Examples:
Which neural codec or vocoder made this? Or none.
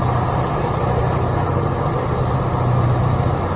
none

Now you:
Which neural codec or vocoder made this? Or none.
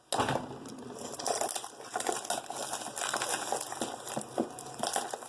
none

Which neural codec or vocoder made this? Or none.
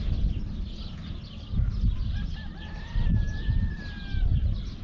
none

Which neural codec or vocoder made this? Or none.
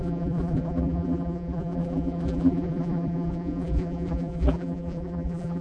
vocoder, BigVGAN v2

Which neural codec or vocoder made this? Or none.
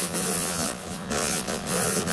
vocoder, Vocos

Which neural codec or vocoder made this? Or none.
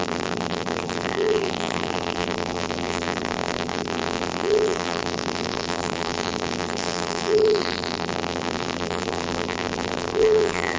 vocoder, BigVGAN v2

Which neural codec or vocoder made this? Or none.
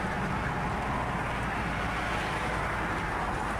none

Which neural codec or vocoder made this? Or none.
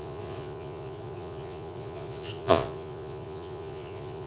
vocoder, Vocos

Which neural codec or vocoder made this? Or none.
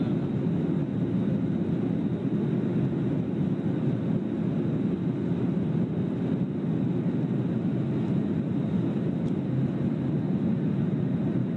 none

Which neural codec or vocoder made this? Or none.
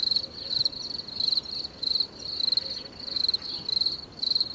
none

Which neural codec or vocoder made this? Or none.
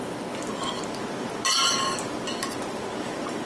none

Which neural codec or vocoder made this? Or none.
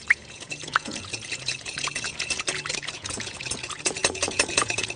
vocoder, Vocos